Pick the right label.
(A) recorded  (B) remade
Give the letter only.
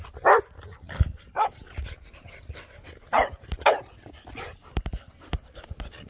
A